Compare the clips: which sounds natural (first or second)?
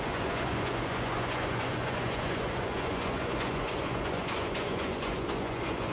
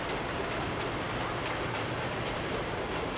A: second